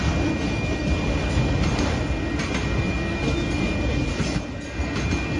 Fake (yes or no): no